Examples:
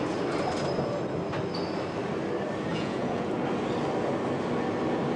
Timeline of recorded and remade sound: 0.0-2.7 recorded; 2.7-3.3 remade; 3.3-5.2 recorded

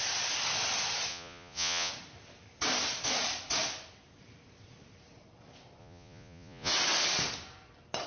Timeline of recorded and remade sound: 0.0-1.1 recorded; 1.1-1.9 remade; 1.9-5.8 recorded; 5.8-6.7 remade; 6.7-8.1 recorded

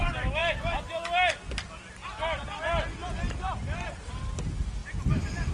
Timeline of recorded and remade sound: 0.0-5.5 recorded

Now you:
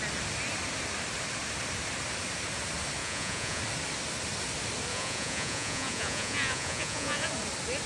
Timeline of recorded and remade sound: 0.0-3.0 recorded; 3.0-3.6 remade; 3.6-4.9 recorded; 4.9-7.3 remade; 7.3-7.9 recorded